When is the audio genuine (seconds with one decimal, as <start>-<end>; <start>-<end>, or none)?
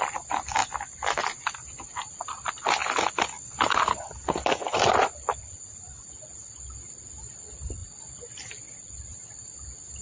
0.0-10.0